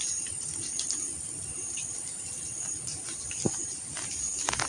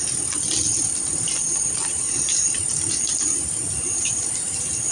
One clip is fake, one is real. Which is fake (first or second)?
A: first